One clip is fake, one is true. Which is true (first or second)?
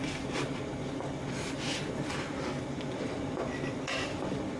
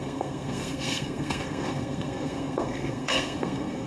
first